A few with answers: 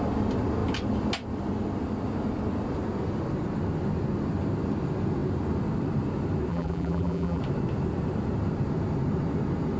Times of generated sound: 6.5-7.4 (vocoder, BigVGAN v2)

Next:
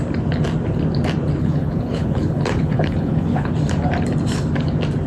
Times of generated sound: 1.4-3.5 (codec, HILCodec)